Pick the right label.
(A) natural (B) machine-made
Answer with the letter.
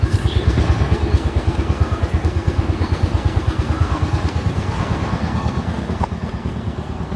B